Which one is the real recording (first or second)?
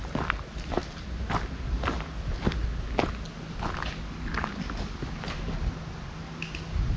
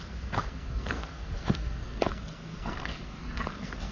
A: first